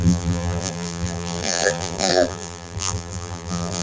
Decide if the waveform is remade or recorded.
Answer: remade